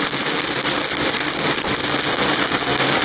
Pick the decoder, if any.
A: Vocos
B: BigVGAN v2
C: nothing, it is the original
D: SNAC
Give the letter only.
C